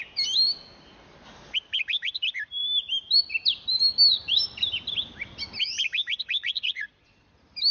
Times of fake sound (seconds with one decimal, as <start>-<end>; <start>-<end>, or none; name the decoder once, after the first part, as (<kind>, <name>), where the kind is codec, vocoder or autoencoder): 6.4-7.3 (vocoder, Vocos)